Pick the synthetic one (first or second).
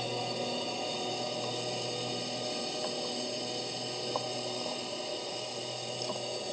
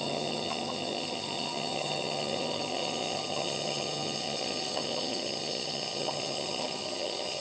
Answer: second